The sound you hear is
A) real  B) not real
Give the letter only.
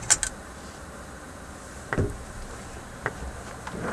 A